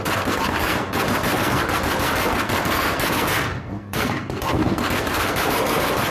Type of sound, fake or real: fake